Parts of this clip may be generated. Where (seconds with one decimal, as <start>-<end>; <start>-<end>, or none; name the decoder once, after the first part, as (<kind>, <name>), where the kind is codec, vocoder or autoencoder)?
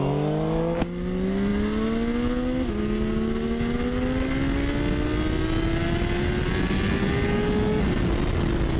none